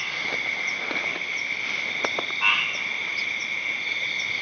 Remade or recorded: recorded